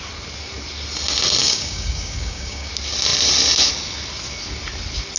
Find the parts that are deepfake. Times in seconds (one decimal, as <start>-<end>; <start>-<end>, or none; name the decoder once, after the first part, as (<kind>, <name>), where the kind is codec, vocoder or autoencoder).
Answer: 1.4-2.7 (codec, DAC)